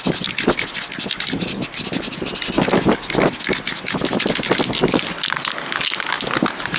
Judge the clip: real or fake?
real